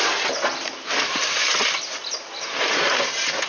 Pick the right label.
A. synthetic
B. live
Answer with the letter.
B